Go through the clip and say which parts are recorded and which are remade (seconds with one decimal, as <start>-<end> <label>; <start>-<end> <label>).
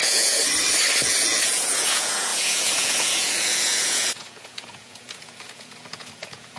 0.0-0.4 remade; 0.4-1.0 recorded; 1.0-6.6 remade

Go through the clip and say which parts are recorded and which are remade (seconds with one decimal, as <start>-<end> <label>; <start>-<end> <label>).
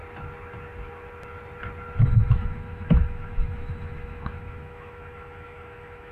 0.0-2.2 recorded; 2.2-6.1 remade